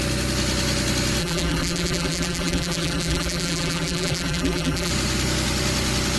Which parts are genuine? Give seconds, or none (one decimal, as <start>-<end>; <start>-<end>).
0.0-1.2; 4.9-6.2